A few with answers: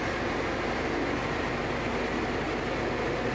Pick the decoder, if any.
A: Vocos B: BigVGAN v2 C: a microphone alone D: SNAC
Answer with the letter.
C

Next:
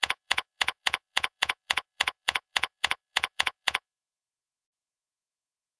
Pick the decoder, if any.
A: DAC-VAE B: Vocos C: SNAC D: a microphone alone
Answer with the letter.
B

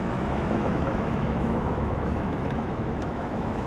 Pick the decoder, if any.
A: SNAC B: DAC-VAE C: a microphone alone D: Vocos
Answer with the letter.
B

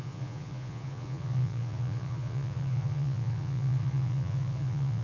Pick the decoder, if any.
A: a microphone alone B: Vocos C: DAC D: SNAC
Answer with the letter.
B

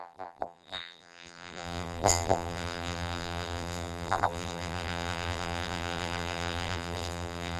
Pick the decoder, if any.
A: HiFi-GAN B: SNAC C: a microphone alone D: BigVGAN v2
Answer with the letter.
D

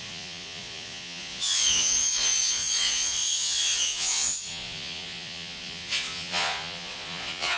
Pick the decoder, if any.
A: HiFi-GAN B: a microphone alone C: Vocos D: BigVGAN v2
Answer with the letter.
C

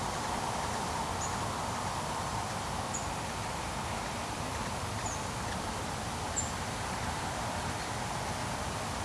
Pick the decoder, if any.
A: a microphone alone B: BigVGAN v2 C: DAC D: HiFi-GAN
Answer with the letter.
B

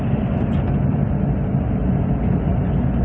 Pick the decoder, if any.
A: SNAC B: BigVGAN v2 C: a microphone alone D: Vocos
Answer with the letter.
C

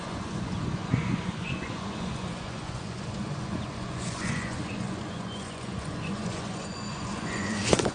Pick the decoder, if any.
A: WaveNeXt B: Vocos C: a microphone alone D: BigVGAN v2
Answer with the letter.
B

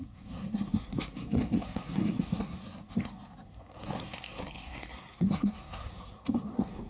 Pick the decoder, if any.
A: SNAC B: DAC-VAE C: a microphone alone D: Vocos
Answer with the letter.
A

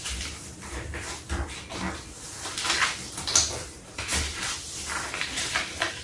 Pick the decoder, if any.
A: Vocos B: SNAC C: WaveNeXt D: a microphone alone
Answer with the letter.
D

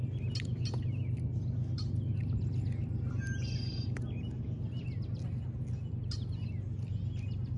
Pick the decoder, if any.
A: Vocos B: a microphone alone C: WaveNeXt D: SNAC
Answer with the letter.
B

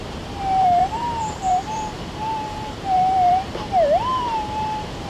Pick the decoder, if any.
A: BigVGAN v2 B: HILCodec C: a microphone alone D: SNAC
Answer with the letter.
A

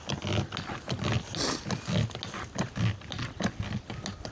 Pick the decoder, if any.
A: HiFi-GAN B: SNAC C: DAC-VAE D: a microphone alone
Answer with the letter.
D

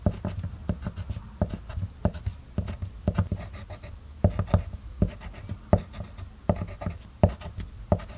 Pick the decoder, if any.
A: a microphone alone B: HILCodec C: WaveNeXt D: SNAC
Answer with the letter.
A